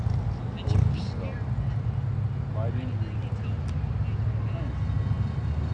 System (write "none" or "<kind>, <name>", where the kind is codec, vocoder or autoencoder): none